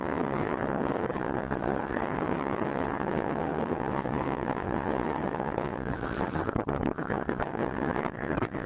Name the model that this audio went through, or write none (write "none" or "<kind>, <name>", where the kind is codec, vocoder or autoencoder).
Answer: vocoder, WaveNeXt